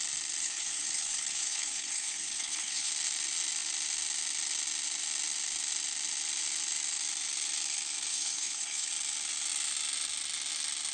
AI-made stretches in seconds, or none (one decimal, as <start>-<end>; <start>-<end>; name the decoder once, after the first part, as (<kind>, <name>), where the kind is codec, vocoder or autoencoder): 0.4-2.9 (codec, HILCodec); 8.1-8.9